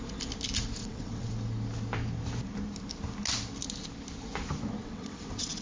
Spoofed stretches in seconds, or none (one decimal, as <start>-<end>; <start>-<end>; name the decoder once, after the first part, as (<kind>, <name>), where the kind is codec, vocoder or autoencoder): 0.8-1.3 (vocoder, WaveNeXt); 4.8-5.6